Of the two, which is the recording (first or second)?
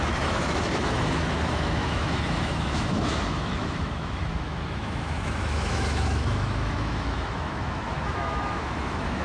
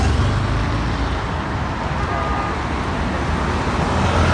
second